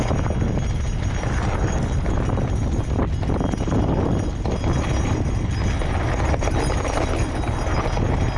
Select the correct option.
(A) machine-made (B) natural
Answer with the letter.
B